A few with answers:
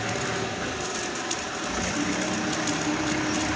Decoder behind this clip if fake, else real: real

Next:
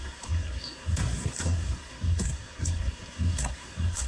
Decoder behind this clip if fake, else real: fake, codec, SNAC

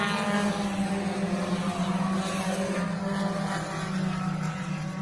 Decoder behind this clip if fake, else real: real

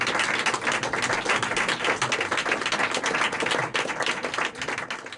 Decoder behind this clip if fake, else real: real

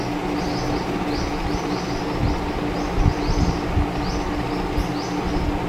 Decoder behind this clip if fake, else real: real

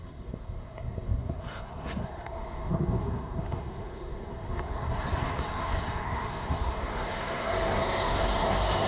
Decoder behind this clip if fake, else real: fake, codec, SNAC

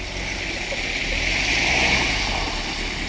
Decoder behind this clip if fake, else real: real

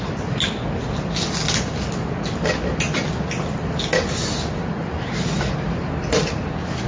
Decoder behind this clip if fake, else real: real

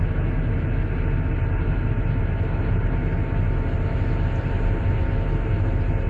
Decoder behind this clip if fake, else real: real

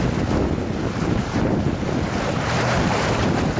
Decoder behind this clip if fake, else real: real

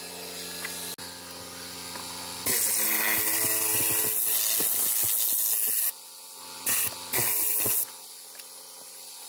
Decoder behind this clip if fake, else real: real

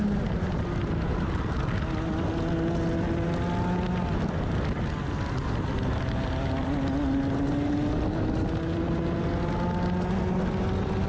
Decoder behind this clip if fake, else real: real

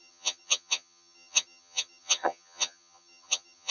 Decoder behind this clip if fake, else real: fake, vocoder, HiFi-GAN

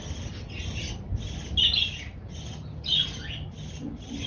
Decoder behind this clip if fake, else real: real